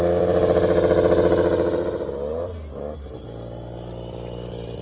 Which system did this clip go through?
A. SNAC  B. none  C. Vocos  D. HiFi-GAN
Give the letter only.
B